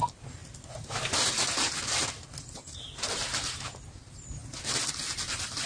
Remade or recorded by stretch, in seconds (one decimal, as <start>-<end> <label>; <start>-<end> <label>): 0.0-5.7 recorded